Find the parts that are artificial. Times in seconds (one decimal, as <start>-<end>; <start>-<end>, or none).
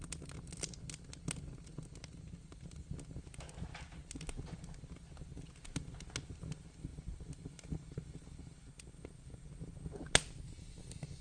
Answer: none